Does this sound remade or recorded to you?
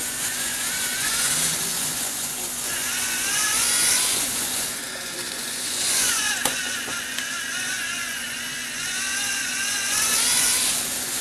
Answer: remade